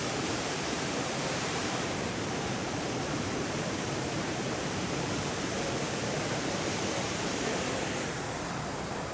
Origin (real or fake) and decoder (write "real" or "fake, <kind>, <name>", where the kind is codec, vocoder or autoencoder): fake, vocoder, BigVGAN v2